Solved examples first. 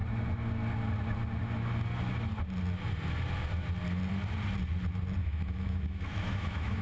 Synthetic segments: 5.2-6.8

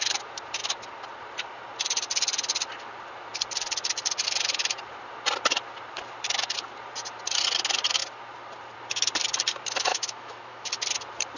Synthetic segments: 9.9-10.7